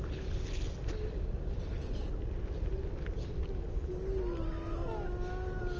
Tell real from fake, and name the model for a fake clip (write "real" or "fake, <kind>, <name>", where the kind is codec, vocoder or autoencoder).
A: real